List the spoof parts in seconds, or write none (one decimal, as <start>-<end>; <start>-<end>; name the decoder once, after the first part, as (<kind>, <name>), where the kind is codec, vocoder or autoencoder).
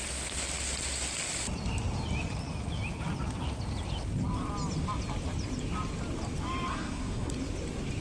6.7-7.3 (codec, SNAC)